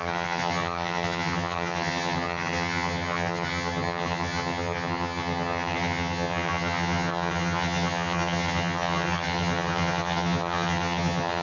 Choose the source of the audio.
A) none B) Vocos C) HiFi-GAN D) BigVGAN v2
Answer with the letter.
C